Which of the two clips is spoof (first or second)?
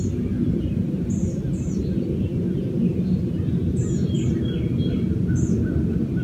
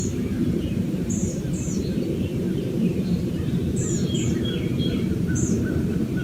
second